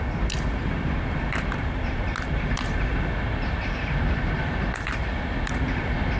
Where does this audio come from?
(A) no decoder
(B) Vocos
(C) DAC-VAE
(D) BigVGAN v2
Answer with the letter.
A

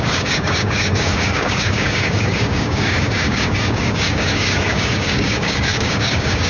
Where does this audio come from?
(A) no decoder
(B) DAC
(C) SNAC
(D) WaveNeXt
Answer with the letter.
B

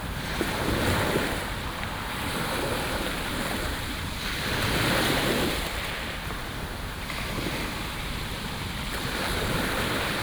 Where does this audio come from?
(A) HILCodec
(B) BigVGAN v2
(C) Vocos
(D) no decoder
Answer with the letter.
B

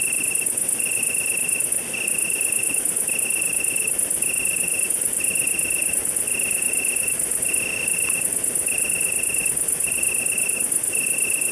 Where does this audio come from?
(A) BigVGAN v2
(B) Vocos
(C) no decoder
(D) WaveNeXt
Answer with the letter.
C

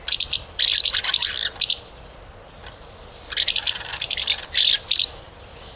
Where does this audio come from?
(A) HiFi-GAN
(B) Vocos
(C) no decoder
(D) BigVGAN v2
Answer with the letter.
D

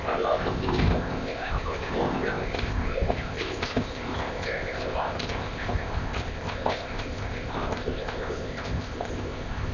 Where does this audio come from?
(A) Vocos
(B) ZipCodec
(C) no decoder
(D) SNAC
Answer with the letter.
B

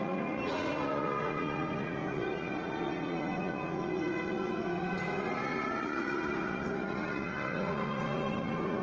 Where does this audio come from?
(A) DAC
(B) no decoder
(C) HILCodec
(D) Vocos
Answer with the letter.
D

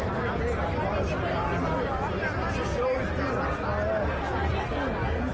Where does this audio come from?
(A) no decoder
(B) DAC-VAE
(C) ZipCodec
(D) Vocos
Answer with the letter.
A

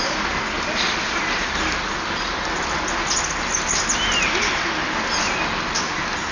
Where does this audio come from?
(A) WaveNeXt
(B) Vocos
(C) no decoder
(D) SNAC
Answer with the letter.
C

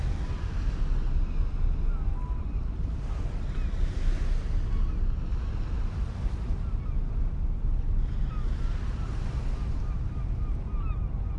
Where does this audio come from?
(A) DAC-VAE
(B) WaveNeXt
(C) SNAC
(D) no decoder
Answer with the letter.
D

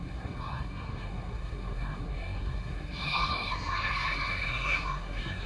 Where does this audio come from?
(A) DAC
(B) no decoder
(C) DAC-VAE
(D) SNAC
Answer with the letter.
D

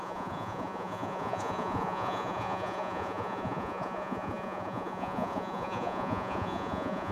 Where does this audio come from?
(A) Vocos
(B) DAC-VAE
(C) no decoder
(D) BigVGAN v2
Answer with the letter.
A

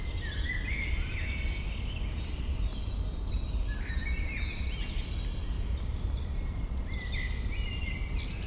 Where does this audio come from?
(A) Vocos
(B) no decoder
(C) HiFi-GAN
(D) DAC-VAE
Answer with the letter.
B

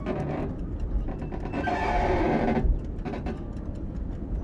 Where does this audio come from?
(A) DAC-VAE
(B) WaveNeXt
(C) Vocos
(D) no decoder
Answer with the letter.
D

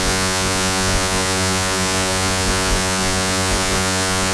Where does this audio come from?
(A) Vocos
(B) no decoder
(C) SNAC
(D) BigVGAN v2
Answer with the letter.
A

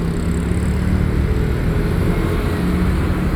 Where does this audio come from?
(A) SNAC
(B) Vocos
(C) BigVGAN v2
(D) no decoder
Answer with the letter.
D